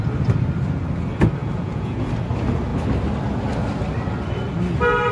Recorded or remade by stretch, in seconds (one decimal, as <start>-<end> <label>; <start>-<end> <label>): 0.0-1.4 recorded; 1.4-2.1 remade; 2.1-5.1 recorded